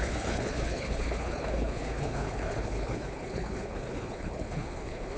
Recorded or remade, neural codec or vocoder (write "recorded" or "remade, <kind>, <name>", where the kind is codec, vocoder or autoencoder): remade, codec, HILCodec